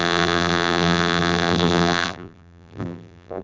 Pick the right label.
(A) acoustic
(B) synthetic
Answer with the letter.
B